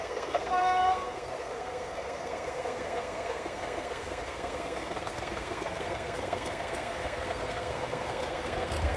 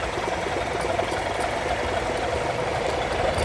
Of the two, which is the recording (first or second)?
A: second